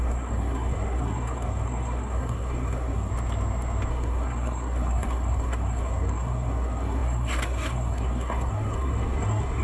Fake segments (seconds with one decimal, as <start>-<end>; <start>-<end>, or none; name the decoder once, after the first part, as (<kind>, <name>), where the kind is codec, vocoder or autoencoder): 0.0-3.1 (codec, SNAC); 3.9-9.6